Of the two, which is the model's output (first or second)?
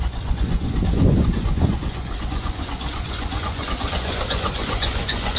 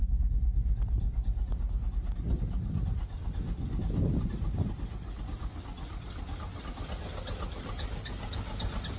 first